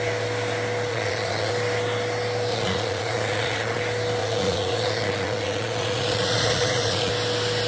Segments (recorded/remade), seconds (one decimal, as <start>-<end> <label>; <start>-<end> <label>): 0.0-0.9 recorded; 0.9-1.5 remade; 1.5-2.5 recorded; 2.5-3.8 remade; 3.8-4.2 recorded; 4.2-7.1 remade; 7.1-7.7 recorded